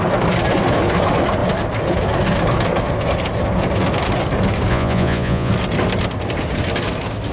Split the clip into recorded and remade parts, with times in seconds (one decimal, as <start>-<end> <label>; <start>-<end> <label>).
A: 0.0-4.7 recorded; 4.7-5.5 remade; 5.5-7.3 recorded